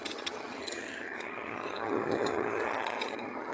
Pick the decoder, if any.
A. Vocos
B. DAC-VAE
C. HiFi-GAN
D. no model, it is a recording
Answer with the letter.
C